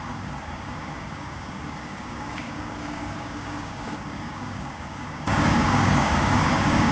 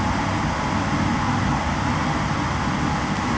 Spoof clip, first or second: first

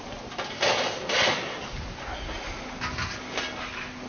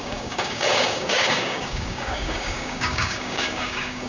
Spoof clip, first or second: second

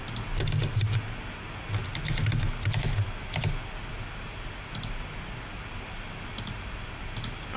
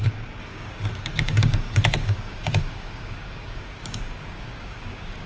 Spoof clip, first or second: second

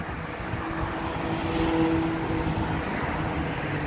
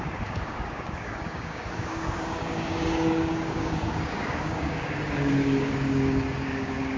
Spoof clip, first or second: second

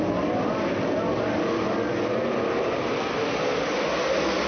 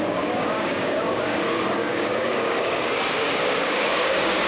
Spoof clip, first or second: second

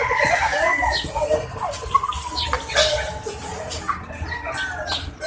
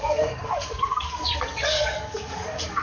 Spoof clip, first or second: second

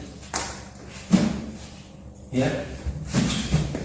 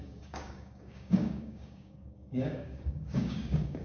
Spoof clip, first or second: second